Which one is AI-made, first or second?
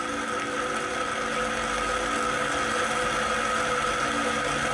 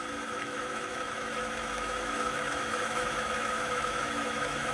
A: second